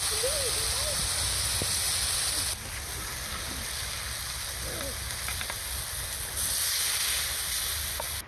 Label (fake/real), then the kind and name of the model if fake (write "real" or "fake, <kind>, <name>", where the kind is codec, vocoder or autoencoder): real